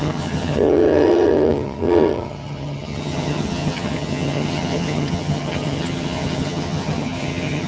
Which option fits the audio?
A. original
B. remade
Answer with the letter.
B